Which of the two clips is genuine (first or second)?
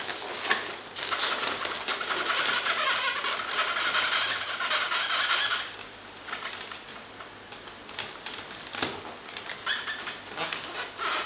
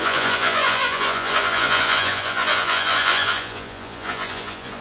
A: first